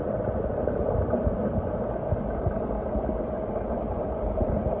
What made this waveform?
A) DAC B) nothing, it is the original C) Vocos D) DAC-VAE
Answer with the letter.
B